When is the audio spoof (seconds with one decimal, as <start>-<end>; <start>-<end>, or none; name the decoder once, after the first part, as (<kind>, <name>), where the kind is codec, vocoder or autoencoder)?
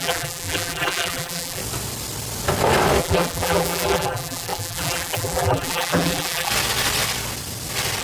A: 0.0-1.6 (vocoder, BigVGAN v2); 3.0-6.5